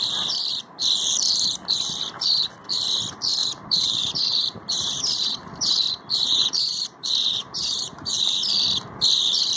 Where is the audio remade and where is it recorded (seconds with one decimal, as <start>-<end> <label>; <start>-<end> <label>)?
0.0-3.4 recorded; 3.4-8.4 remade; 8.4-9.6 recorded